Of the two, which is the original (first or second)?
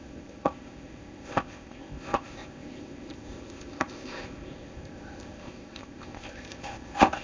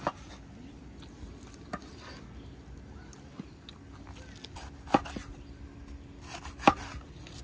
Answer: second